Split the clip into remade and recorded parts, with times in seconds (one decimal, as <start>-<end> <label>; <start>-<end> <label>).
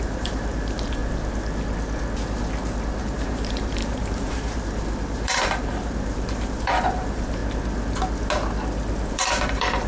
0.0-1.0 remade; 1.0-3.0 recorded; 3.0-7.4 remade; 7.4-9.1 recorded; 9.1-9.9 remade